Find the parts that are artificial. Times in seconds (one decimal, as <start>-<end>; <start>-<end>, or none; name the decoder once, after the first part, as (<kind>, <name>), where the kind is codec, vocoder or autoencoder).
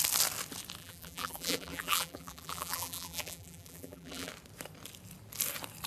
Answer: 0.8-4.3 (vocoder, BigVGAN v2)